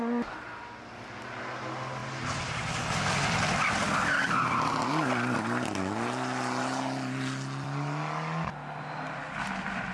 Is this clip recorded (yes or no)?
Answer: yes